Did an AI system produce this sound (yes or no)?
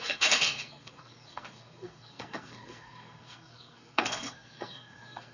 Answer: yes